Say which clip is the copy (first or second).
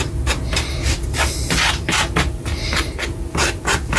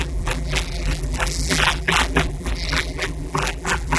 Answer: second